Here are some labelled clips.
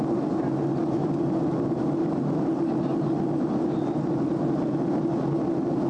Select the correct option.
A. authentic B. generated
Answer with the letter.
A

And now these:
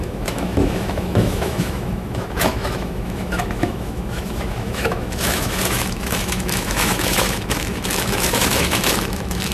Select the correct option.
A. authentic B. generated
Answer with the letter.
B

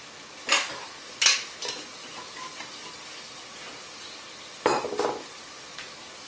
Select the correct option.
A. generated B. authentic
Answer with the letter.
B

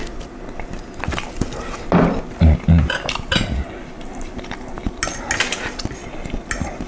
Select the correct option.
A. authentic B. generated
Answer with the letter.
A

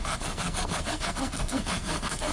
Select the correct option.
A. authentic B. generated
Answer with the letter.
B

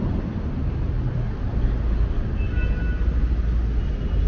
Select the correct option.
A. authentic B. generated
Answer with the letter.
A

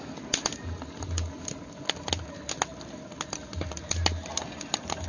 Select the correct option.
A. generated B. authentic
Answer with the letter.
B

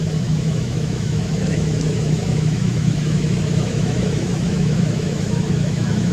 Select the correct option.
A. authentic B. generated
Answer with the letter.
B